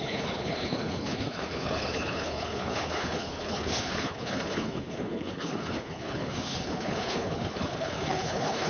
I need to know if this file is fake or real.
fake